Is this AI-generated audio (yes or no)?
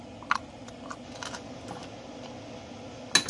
no